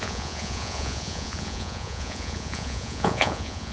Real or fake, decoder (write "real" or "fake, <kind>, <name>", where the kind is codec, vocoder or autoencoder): fake, vocoder, Vocos